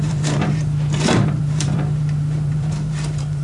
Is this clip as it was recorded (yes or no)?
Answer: no